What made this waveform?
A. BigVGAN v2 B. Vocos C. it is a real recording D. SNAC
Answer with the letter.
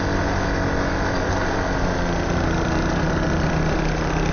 C